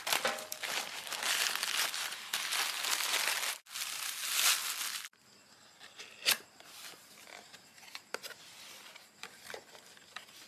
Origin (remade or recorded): recorded